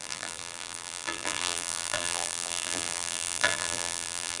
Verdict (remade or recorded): remade